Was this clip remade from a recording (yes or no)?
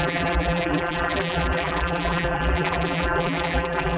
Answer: yes